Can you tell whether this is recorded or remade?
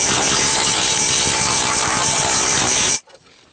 remade